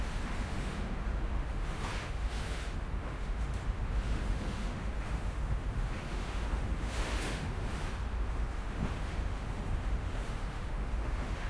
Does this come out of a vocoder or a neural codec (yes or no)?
yes